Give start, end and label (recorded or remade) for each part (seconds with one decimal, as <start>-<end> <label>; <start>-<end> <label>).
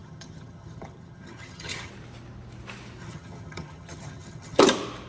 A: 0.0-1.9 remade; 1.9-3.0 recorded; 3.0-4.6 remade; 4.6-5.1 recorded